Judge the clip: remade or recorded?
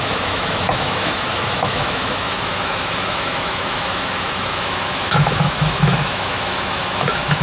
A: remade